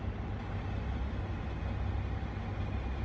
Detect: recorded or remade recorded